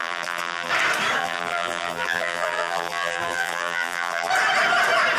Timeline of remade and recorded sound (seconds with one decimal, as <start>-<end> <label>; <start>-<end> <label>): 0.0-0.7 remade; 0.7-1.2 recorded; 1.2-4.3 remade; 4.3-5.2 recorded